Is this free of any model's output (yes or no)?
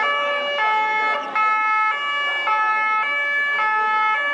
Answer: yes